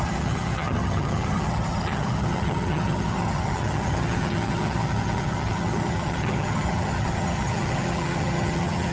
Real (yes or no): no